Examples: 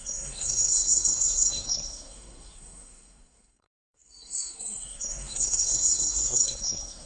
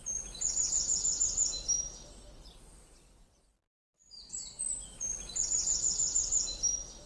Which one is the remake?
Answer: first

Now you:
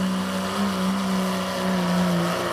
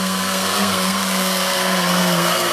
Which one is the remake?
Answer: second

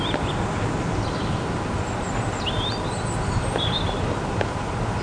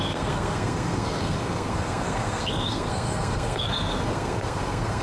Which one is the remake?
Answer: second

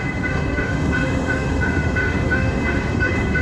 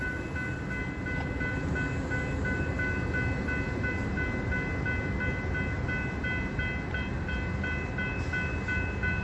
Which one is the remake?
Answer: first